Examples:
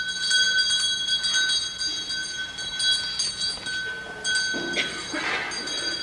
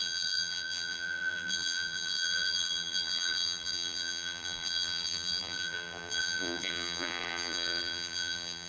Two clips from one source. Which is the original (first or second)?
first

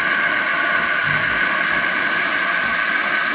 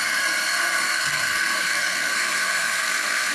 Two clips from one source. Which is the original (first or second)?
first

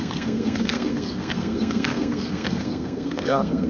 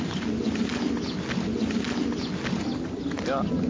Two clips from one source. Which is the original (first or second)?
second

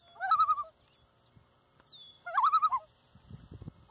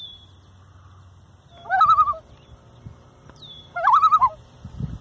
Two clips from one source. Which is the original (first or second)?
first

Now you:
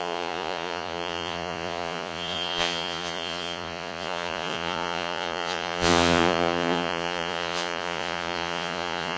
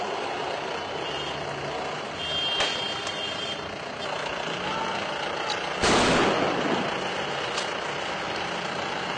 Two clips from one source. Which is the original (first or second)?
second